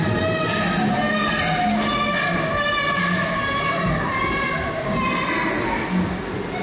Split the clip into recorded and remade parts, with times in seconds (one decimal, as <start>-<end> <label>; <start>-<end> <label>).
0.0-6.6 recorded